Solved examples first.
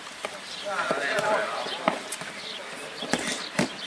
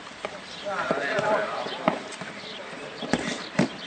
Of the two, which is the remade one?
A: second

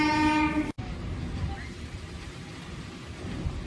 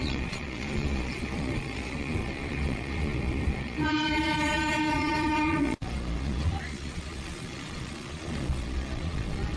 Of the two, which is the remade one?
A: second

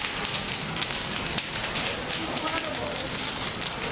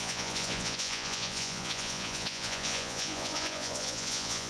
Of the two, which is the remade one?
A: second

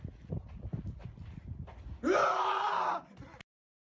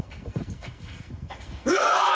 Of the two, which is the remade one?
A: second